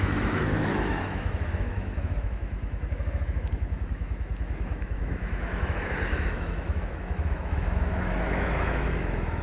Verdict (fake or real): fake